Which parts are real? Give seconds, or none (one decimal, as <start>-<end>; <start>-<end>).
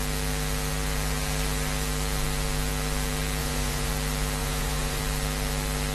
0.0-3.4; 3.9-4.4; 5.0-5.9